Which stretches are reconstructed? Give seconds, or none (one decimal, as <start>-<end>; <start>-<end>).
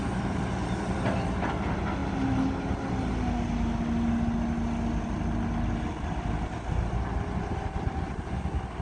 none